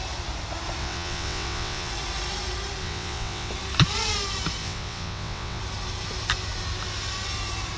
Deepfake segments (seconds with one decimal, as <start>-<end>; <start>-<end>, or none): 0.8-1.9; 2.8-3.5; 4.6-5.6